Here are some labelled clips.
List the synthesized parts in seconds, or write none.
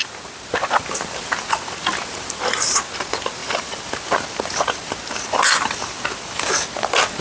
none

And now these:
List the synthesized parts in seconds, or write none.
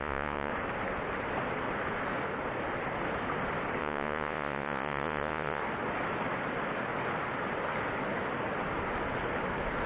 0.0-0.5 (vocoder, Vocos); 3.8-5.6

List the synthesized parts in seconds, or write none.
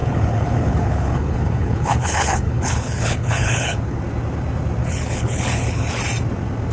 0.0-4.0 (codec, HILCodec); 4.8-6.0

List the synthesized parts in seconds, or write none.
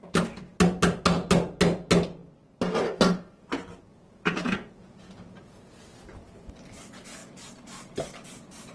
3.9-5.6 (vocoder, Vocos)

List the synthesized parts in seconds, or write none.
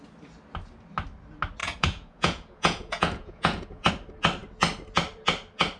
1.6-3.9 (vocoder, Vocos)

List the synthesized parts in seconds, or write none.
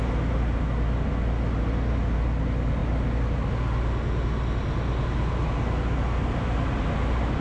none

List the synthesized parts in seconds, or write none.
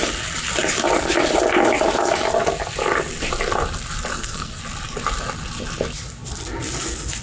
4.1-4.6 (codec, SNAC)